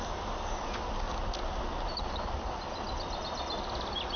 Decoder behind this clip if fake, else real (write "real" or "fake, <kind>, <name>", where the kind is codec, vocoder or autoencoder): real